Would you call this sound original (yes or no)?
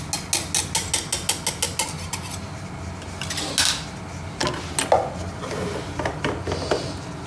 yes